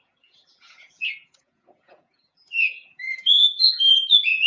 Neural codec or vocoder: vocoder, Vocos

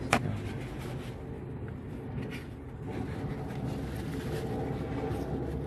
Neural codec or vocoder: none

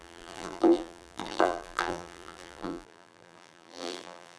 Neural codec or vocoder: vocoder, BigVGAN v2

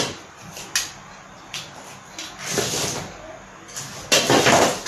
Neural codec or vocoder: none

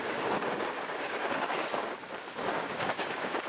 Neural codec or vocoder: codec, DAC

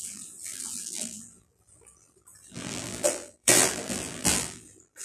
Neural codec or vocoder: vocoder, BigVGAN v2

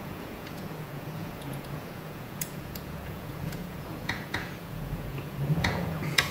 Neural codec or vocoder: vocoder, Vocos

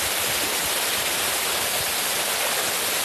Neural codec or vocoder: none